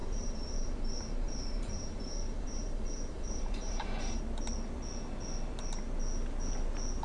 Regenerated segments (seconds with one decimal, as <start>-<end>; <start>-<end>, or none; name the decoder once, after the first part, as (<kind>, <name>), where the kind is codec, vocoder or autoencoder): 0.0-4.2 (vocoder, BigVGAN v2)